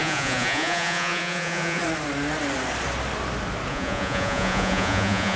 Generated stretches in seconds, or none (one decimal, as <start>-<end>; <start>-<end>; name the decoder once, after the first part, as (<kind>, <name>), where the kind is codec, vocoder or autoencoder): 0.0-1.8 (vocoder, Vocos); 3.7-5.4